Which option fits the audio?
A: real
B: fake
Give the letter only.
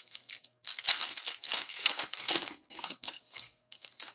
B